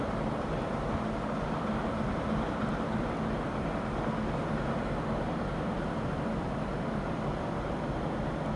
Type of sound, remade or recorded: remade